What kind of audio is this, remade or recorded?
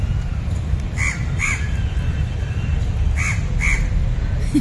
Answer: remade